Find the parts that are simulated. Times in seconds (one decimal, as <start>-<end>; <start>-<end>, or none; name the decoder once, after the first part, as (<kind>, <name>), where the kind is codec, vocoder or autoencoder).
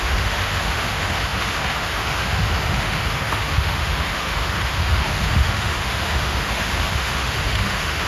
0.0-8.1 (autoencoder, DAC-VAE)